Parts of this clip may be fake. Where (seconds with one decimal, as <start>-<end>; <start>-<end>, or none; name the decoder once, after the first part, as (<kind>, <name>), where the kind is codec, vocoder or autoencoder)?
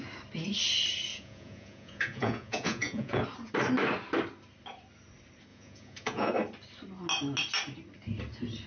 1.1-3.2 (vocoder, Vocos); 5.5-6.3